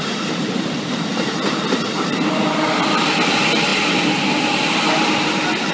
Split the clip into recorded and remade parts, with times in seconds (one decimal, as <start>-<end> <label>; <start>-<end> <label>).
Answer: 0.0-5.7 recorded